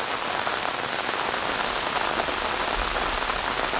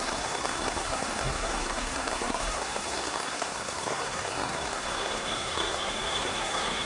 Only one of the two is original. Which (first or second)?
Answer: first